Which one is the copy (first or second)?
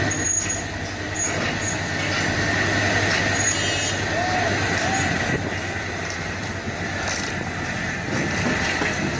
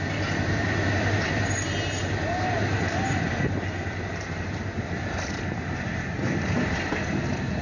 second